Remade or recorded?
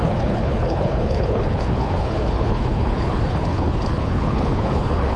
remade